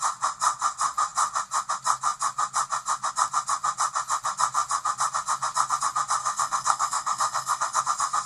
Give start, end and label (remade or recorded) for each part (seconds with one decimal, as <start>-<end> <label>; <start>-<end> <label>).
0.0-6.2 recorded; 6.2-7.8 remade; 7.8-8.3 recorded